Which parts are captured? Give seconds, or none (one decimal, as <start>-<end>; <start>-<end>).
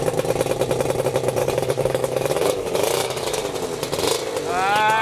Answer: 0.0-1.4; 3.4-5.0